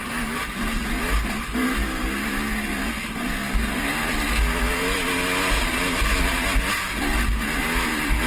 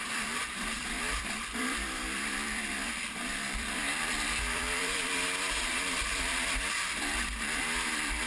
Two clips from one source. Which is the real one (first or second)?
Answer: first